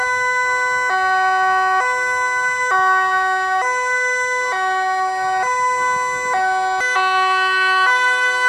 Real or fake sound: real